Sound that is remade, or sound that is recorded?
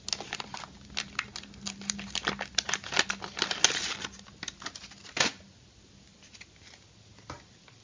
recorded